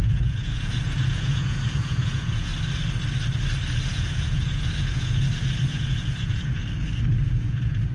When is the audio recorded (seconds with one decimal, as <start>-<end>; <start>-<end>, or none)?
2.5-3.9; 6.6-7.1